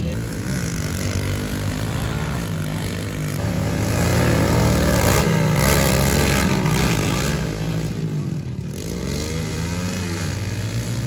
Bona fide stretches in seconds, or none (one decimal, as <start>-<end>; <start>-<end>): 0.0-11.1